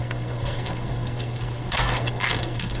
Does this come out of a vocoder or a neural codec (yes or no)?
yes